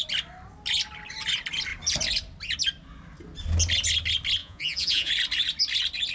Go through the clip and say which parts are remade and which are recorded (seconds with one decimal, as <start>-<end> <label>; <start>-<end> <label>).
0.0-4.4 recorded; 4.4-5.1 remade; 5.1-6.1 recorded